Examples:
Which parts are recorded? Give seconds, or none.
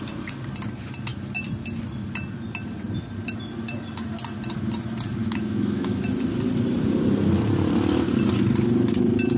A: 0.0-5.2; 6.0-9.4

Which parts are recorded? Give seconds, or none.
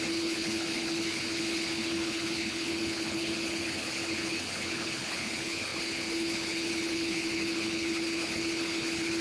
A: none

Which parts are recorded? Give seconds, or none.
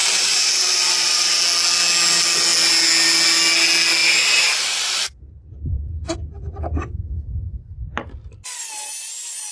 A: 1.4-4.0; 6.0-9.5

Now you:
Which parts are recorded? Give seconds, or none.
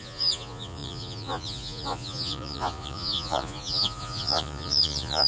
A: none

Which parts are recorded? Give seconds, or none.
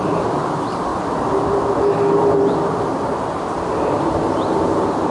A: 0.9-4.0